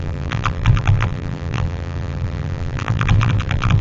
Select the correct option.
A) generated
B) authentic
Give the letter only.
A